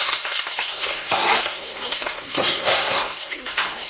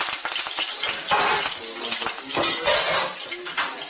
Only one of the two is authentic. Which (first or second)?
second